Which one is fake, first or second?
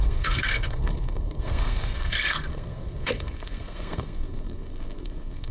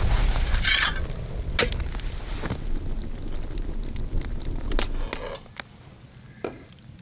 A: first